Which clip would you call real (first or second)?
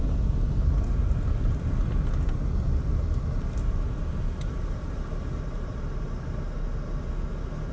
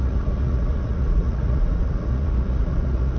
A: first